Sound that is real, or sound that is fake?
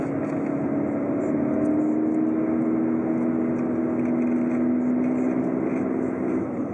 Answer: real